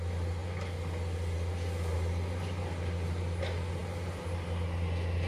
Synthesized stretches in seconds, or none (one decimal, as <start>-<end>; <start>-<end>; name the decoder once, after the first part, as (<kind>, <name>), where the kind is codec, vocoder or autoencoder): none